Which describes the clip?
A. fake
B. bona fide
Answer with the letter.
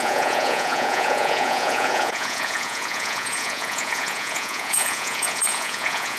A